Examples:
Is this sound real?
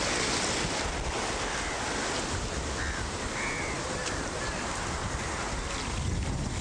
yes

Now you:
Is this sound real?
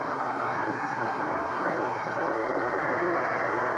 no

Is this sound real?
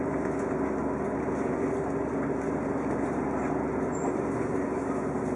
yes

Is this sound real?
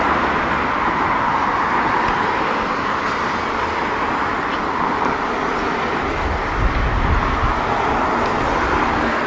yes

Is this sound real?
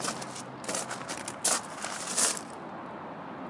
yes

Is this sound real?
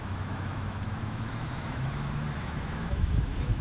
no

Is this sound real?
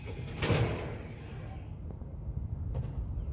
yes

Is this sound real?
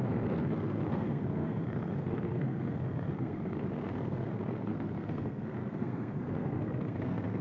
no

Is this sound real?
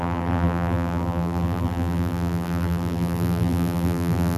no